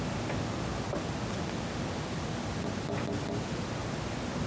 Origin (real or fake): real